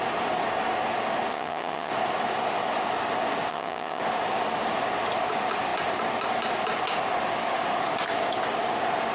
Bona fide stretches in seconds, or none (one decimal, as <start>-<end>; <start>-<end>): 0.0-1.3; 1.9-3.5; 4.0-9.1